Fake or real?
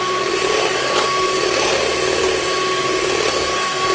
real